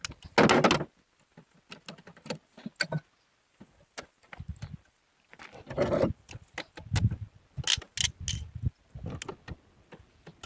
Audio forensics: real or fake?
real